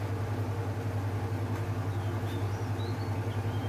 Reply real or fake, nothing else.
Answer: real